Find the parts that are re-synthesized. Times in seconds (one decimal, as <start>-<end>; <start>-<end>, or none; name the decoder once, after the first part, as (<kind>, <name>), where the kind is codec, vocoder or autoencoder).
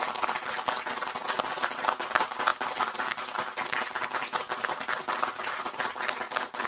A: 2.5-4.4 (vocoder, BigVGAN v2)